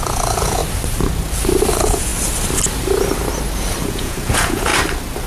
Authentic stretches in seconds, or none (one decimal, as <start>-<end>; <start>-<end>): 0.6-1.7; 2.1-3.8; 4.7-5.3